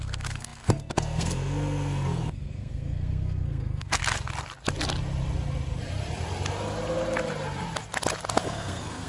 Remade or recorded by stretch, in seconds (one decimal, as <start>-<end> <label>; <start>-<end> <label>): 0.0-4.0 remade; 4.0-8.4 recorded; 8.4-9.1 remade

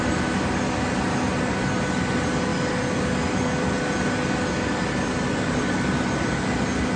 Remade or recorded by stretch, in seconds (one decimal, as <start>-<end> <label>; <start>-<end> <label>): 0.0-7.0 recorded

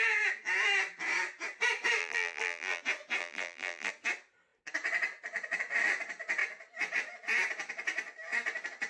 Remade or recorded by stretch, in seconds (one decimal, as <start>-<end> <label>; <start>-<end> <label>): 0.0-2.0 recorded; 2.0-2.8 remade; 2.8-3.2 recorded; 3.2-3.9 remade; 3.9-8.9 recorded

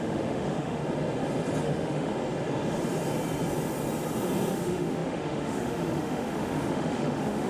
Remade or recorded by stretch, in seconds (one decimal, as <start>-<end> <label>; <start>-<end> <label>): 0.0-0.8 remade; 0.8-1.6 recorded; 1.6-2.1 remade; 2.1-4.5 recorded; 4.5-7.5 remade

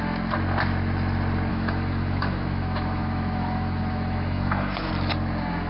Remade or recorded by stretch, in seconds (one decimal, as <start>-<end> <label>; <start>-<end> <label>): 0.0-1.5 recorded; 1.5-4.9 remade; 4.9-5.7 recorded

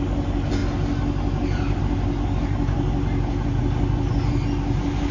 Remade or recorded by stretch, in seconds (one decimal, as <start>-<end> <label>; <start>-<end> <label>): 0.0-5.1 recorded